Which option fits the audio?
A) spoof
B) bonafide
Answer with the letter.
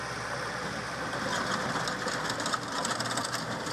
B